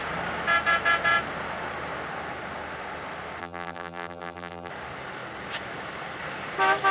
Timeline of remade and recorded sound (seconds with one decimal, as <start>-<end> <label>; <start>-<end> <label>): 0.0-3.4 recorded; 3.4-4.7 remade; 4.7-6.9 recorded